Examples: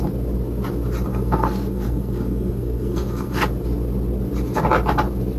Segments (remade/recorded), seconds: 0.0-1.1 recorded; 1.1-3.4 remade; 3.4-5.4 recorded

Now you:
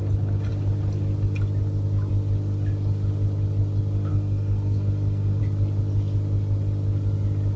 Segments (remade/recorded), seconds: 0.0-4.1 recorded; 4.1-5.4 remade; 5.4-7.6 recorded

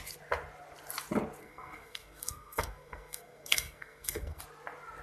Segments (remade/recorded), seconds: 0.0-1.4 recorded; 1.4-4.4 remade; 4.4-5.0 recorded

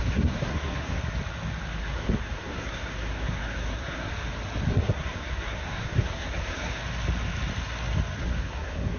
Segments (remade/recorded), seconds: 0.0-1.0 remade; 1.0-1.8 recorded; 1.8-4.1 remade; 4.1-4.7 recorded; 4.7-6.8 remade; 6.8-8.2 recorded; 8.2-9.0 remade

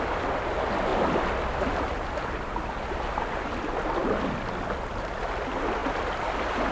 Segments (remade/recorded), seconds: 0.0-6.7 recorded

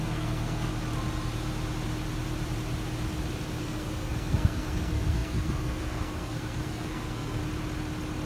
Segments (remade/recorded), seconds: 0.0-0.7 remade; 0.7-3.6 recorded; 3.6-7.4 remade; 7.4-8.3 recorded

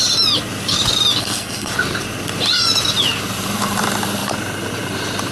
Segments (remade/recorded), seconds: 0.0-1.2 recorded; 1.2-1.7 remade; 1.7-5.3 recorded